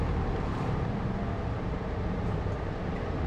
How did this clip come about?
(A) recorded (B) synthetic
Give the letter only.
B